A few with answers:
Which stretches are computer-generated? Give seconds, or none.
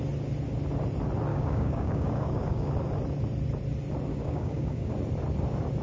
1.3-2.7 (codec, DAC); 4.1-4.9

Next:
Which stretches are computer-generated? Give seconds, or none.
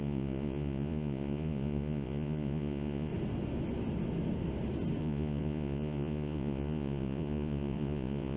0.0-3.1 (vocoder, Vocos); 5.0-8.4